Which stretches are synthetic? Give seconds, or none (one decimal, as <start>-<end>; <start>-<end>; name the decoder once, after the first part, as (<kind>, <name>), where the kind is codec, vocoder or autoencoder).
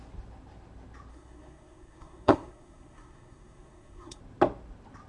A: 1.1-4.2 (codec, SNAC)